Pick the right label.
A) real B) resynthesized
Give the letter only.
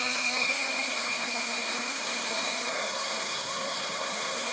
B